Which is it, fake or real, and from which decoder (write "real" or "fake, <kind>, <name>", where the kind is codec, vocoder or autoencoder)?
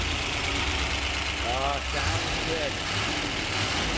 real